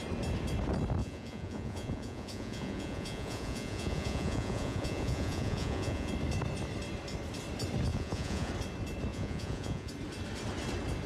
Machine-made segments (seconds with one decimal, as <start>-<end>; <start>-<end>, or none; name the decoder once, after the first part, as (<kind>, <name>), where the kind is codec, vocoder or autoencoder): 1.0-6.1 (vocoder, Vocos); 7.9-8.5; 9.1-9.9